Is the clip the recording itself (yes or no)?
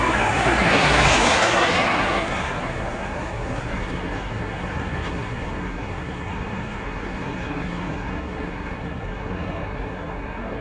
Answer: no